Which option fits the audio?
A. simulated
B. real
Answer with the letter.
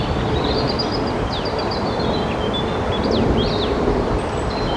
B